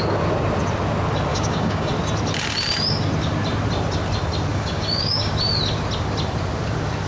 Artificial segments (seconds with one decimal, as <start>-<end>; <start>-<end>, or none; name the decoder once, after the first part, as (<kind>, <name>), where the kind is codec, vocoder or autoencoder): 1.3-1.9 (codec, DAC); 4.5-5.3

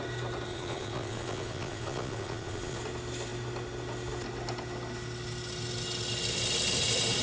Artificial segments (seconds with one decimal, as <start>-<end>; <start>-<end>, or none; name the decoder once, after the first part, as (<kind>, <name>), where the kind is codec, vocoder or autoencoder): 0.5-2.8 (vocoder, Vocos)

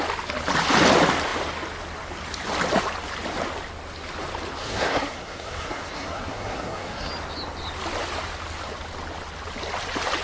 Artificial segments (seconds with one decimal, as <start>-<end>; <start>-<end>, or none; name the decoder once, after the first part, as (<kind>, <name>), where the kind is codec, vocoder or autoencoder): 4.6-7.1 (codec, SNAC)